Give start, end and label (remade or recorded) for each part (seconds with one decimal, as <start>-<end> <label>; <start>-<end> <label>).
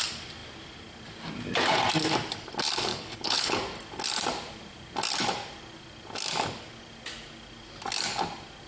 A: 0.0-2.9 recorded; 2.9-3.5 remade; 3.5-8.7 recorded